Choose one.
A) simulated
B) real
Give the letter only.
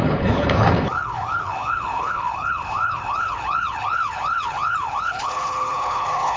A